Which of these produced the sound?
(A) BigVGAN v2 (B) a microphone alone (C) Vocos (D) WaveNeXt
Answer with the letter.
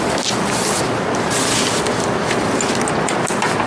B